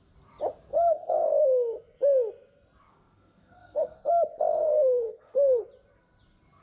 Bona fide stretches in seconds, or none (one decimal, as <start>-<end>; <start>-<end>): 0.0-0.7; 1.3-2.9; 4.1-4.5; 5.6-6.6